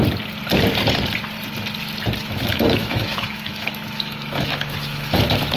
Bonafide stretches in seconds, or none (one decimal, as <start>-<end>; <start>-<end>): 0.0-2.2